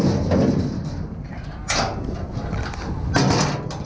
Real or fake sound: real